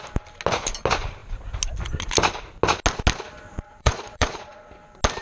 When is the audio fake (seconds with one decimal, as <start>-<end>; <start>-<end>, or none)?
3.5-4.7